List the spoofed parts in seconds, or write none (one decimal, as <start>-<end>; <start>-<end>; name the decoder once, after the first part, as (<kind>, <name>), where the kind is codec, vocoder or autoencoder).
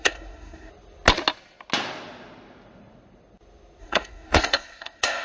0.0-0.7 (codec, SNAC); 3.8-5.2